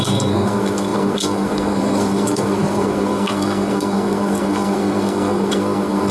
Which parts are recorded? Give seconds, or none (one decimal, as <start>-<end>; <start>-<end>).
none